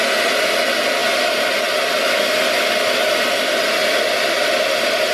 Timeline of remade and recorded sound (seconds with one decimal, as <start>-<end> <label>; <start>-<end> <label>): 0.0-5.1 recorded